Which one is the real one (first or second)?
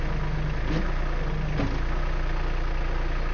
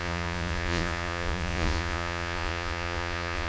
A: first